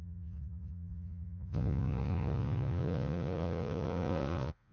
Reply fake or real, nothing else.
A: fake